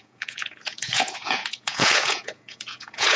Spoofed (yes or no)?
yes